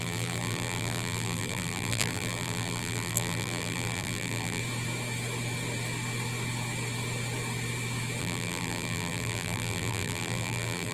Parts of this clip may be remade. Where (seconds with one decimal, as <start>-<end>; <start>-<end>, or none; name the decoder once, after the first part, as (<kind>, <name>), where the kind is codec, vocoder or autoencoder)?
0.0-4.6 (vocoder, BigVGAN v2); 8.2-10.9

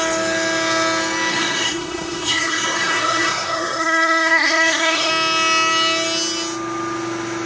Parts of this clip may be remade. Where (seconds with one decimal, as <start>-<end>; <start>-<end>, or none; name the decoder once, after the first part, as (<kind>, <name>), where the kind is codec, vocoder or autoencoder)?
1.3-5.1 (codec, SNAC)